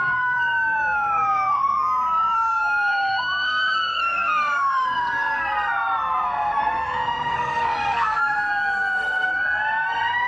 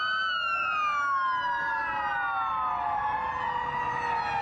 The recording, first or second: second